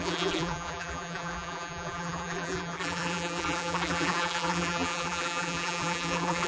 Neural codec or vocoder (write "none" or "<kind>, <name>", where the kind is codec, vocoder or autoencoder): vocoder, BigVGAN v2